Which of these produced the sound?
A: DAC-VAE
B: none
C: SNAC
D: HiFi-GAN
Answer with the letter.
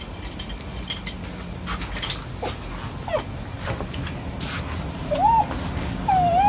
B